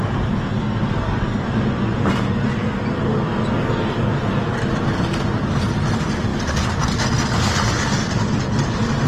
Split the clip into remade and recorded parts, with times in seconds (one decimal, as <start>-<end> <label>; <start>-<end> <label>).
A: 0.0-9.1 recorded